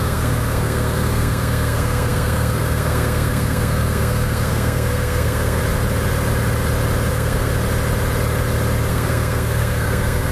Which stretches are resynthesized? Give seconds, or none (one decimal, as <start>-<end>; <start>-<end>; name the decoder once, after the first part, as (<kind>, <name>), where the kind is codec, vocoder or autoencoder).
0.0-5.6 (codec, SNAC); 7.1-7.5; 8.9-10.3